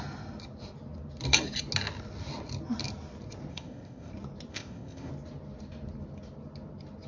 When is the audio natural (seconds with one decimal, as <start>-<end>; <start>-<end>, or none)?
0.0-3.5; 4.1-4.5; 5.1-7.1